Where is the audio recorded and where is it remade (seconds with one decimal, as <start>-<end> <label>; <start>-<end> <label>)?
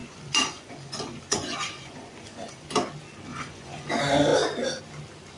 0.0-2.7 remade; 2.7-3.3 recorded; 3.3-3.9 remade; 3.9-5.4 recorded